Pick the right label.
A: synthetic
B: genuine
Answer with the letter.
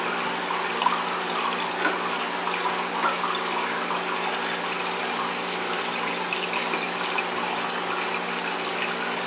B